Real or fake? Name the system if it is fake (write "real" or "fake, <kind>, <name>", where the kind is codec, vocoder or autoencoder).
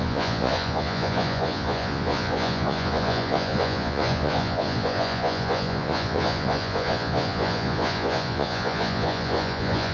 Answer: fake, vocoder, Vocos